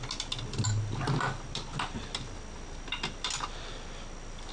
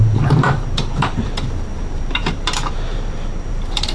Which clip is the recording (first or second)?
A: first